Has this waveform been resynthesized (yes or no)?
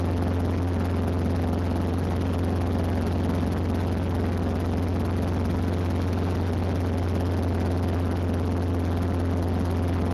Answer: no